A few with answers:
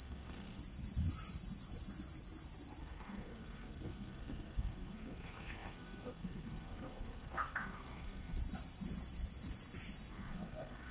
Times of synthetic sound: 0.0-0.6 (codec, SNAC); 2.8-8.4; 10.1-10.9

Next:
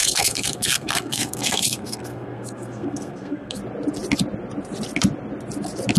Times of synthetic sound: 0.0-3.6 (codec, SNAC)

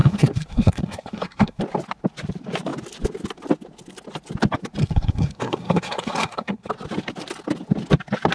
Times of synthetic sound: 0.0-1.6 (codec, SNAC); 4.8-6.7

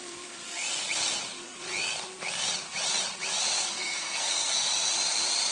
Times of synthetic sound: 0.0-0.4 (codec, SNAC); 3.6-4.7

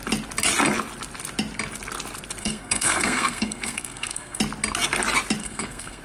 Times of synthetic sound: 2.4-4.4 (codec, SNAC); 5.4-6.0

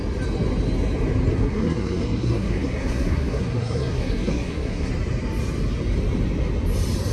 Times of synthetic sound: 1.3-4.9 (codec, SNAC)

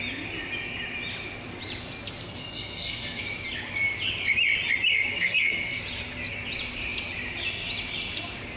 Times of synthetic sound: 2.2-3.2 (codec, SNAC); 4.9-5.8

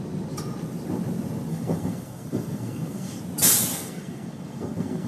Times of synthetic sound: 1.5-3.2 (codec, SNAC); 3.7-5.1